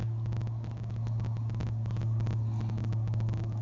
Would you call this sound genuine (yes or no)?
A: yes